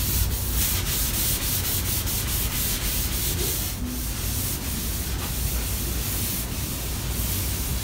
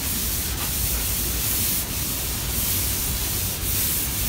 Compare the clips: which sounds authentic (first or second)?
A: first